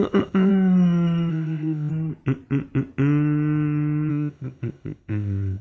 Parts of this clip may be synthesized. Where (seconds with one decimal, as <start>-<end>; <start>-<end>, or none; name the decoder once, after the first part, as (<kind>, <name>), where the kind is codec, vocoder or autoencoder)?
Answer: 0.0-0.5 (codec, ZipCodec); 1.3-1.9; 4.1-5.6